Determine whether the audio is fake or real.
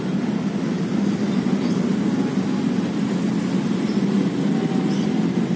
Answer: real